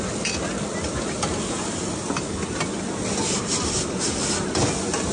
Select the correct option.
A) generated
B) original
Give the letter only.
B